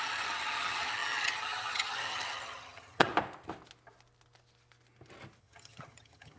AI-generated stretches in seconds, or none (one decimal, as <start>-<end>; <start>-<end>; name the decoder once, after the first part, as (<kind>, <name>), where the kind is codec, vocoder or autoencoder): 0.0-3.1 (vocoder, HiFi-GAN); 5.4-6.4